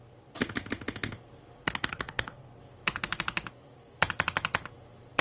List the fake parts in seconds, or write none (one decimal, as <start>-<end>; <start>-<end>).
1.9-2.6